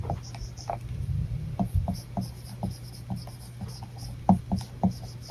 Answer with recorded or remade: recorded